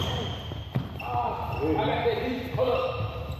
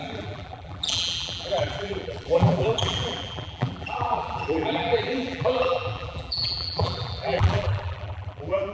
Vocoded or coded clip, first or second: second